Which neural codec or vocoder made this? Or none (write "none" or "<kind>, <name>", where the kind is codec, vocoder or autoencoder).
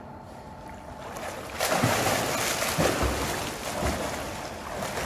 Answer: none